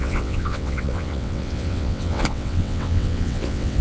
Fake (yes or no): yes